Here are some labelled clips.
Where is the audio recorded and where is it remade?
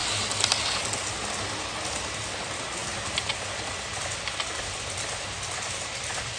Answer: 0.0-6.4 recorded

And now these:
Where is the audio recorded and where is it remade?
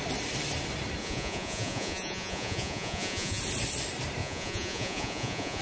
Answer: 0.0-1.0 recorded; 1.0-3.4 remade; 3.4-4.2 recorded; 4.2-5.6 remade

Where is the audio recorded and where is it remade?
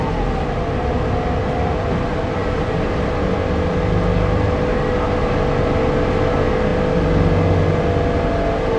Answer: 0.0-8.8 recorded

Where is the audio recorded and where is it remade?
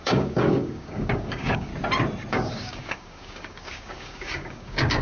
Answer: 0.0-1.7 remade; 1.7-2.3 recorded; 2.3-5.0 remade